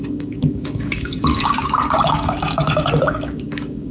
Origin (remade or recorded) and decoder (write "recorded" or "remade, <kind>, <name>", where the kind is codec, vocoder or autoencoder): remade, codec, DAC